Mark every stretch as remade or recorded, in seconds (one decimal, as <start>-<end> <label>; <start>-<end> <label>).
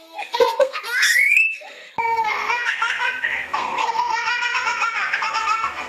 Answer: 0.0-5.9 remade